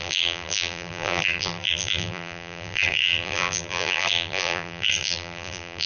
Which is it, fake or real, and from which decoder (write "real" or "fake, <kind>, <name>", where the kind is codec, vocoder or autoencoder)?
fake, vocoder, BigVGAN v2